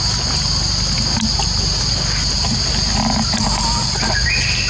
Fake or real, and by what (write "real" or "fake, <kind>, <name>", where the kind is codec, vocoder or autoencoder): real